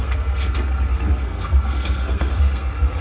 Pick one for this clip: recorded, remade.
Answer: remade